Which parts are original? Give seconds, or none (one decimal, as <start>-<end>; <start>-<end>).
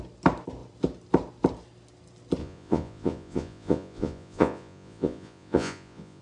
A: 0.0-2.4